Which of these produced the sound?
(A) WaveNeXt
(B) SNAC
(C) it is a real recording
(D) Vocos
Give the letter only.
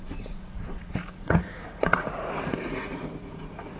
D